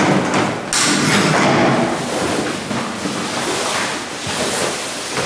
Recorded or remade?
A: recorded